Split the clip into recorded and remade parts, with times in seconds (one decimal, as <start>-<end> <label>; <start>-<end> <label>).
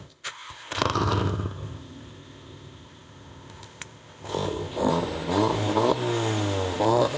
0.0-4.9 remade; 4.9-6.8 recorded; 6.8-7.2 remade